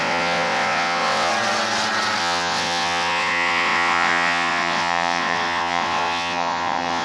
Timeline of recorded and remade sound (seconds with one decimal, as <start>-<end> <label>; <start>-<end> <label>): 0.0-1.3 remade; 1.3-2.2 recorded; 2.2-7.0 remade